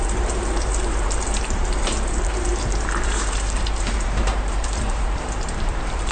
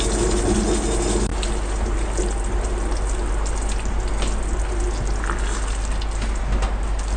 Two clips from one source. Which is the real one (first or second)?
second